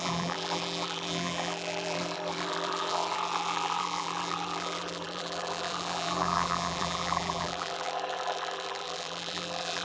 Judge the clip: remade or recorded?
remade